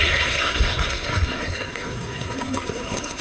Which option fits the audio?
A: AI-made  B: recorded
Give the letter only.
A